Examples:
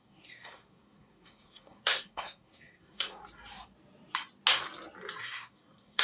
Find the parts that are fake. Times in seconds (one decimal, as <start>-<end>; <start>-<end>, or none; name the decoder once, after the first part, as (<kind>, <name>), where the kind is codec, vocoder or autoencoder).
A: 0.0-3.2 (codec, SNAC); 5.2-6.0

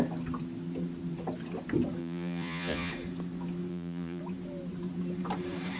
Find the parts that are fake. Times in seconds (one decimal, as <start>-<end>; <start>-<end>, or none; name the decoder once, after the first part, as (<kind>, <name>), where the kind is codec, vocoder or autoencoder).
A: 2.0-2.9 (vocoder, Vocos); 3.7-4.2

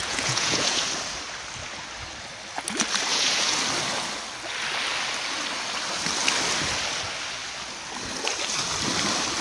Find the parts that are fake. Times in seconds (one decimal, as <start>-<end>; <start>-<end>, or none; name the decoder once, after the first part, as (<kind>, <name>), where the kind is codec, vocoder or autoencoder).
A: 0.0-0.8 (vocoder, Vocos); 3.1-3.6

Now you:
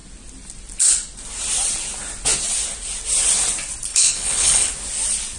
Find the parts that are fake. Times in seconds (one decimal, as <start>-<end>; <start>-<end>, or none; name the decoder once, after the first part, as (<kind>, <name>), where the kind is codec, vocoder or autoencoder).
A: 3.9-4.7 (codec, HILCodec)

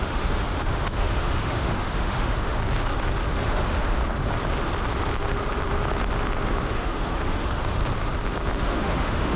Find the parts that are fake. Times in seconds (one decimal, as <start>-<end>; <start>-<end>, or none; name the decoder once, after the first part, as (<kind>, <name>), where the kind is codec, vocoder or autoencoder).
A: 0.0-2.6 (autoencoder, DAC-VAE); 3.4-4.0; 6.7-7.8; 8.6-9.4

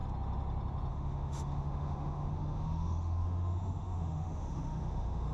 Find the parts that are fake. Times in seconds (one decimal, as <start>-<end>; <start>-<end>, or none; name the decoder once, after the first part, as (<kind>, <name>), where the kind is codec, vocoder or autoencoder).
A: 0.9-5.3 (autoencoder, DAC-VAE)

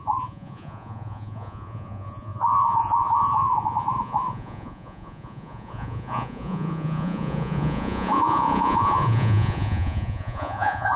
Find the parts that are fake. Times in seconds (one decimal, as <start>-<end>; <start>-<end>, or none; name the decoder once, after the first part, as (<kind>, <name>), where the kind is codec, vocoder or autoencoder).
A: 0.0-11.0 (vocoder, Vocos)